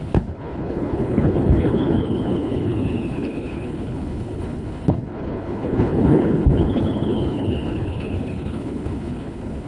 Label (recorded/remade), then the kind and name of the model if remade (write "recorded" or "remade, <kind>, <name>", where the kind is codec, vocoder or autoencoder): remade, codec, HILCodec